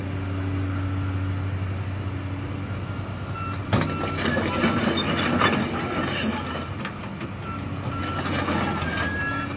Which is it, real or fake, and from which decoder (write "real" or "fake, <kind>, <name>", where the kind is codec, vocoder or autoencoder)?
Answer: real